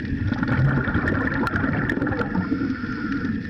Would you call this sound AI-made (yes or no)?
no